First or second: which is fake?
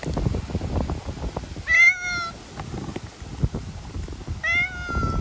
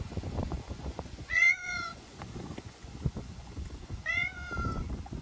second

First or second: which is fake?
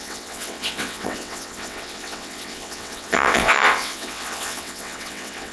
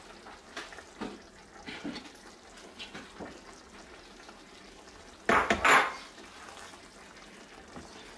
first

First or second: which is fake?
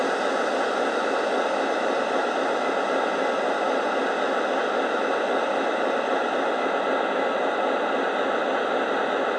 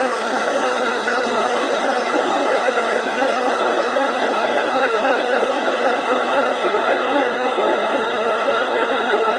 second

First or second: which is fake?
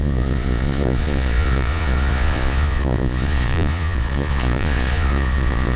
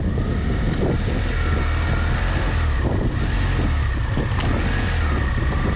first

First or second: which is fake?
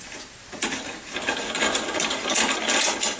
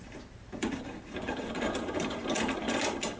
second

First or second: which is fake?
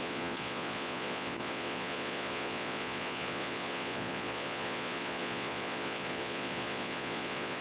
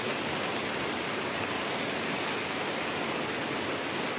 first